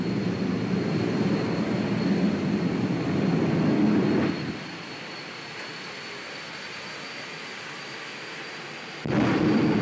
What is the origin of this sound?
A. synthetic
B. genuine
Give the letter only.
B